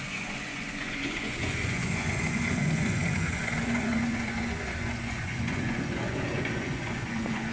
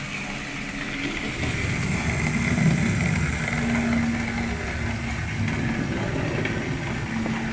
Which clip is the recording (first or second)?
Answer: second